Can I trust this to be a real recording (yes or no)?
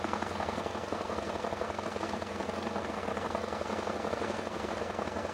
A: no